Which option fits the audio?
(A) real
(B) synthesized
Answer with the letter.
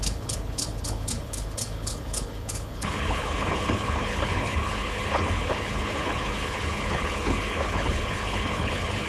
B